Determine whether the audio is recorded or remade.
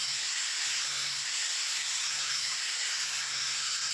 remade